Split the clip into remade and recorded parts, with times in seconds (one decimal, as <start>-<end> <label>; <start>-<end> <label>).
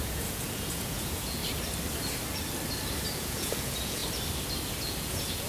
0.0-1.4 remade; 1.4-3.1 recorded; 3.1-4.0 remade; 4.0-4.8 recorded; 4.8-5.5 remade